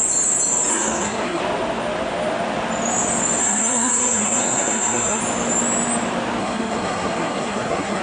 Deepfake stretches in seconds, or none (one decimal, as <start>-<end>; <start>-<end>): 0.7-1.4; 3.4-5.2; 6.4-8.0